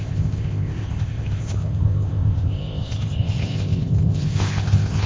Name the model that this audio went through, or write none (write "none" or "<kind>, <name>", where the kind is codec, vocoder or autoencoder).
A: codec, ZipCodec